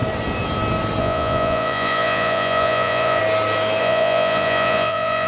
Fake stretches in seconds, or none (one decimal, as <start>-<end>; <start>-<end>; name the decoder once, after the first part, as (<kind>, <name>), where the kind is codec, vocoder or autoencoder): 1.0-3.2 (vocoder, Vocos); 3.8-5.3